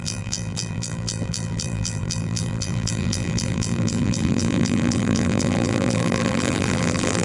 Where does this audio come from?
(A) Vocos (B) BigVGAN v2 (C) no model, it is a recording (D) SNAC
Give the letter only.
B